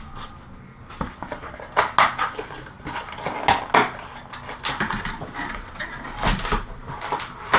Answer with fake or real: real